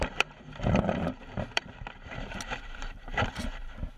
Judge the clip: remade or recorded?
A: remade